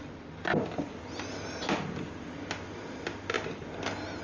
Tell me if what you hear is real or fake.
real